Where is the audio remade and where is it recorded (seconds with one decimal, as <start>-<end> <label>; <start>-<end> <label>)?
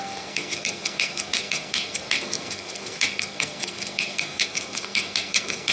0.0-5.7 remade